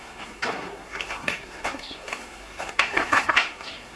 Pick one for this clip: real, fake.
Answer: fake